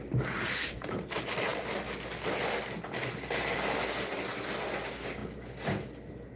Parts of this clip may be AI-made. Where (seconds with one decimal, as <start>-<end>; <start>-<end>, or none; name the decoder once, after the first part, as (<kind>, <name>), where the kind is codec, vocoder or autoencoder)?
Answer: none